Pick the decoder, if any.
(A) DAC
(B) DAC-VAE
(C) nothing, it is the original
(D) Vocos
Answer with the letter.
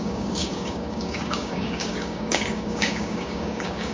A